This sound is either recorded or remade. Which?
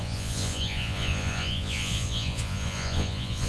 remade